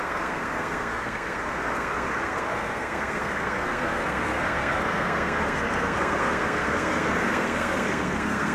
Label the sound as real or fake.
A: fake